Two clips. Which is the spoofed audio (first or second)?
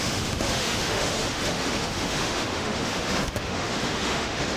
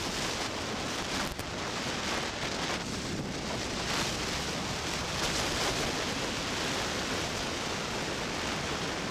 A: first